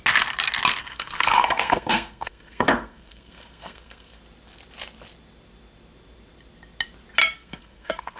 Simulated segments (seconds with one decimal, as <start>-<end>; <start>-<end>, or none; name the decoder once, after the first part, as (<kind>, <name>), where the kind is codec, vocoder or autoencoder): 0.8-4.2 (codec, SNAC); 7.2-8.2